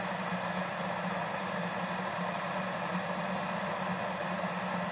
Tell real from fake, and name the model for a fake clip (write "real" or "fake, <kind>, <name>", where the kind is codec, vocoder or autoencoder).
real